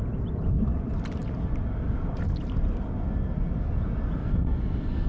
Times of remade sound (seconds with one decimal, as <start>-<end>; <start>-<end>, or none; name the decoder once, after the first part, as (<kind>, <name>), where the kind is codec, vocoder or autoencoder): 4.2-5.1 (codec, SNAC)